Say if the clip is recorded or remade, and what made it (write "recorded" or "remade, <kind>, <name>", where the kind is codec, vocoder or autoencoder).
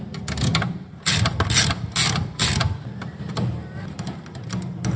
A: recorded